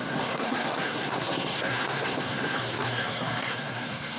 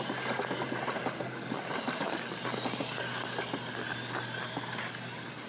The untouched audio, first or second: second